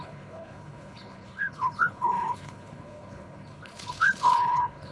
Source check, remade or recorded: remade